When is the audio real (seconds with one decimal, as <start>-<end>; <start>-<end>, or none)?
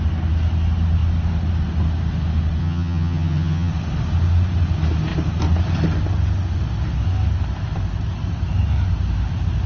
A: 0.0-2.6; 3.7-9.7